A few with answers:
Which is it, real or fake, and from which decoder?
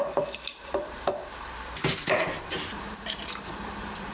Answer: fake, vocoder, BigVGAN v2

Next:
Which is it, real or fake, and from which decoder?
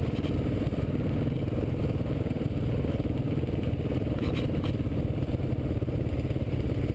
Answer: real